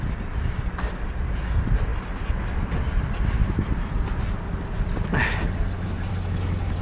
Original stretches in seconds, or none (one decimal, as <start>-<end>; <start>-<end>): 0.0-6.8